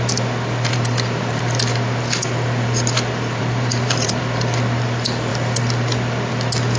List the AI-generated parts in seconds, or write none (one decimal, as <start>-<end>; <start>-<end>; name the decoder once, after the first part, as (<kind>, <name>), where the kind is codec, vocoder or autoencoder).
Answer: 0.7-1.4 (vocoder, BigVGAN v2); 3.3-4.2